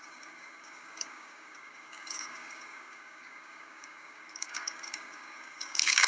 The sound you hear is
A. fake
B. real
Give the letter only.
A